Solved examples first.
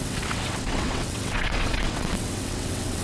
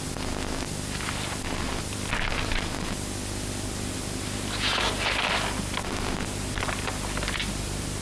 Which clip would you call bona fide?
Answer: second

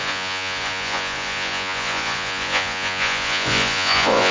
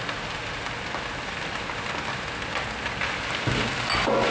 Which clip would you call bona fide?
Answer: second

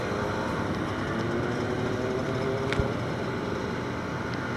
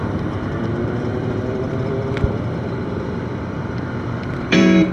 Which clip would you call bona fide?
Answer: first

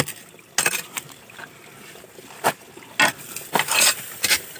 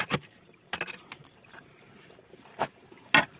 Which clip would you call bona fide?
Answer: first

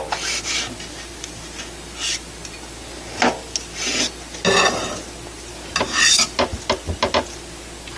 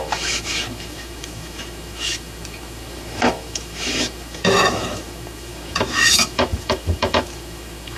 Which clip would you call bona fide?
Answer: first